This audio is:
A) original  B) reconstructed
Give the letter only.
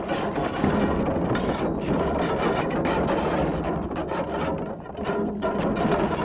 A